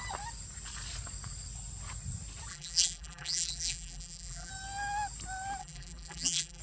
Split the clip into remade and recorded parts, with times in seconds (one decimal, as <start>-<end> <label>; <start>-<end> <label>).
0.0-2.5 recorded; 2.5-4.5 remade; 4.5-5.6 recorded; 5.6-6.6 remade